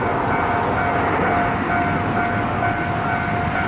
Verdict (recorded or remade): recorded